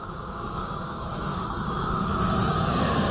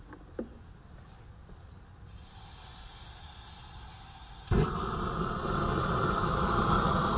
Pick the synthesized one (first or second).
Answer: first